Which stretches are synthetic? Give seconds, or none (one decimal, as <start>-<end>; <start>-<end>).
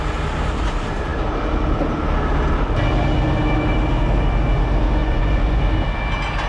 5.0-5.6